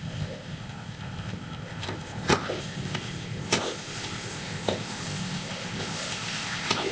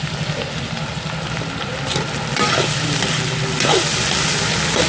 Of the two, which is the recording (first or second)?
second